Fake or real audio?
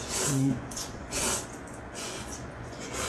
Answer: fake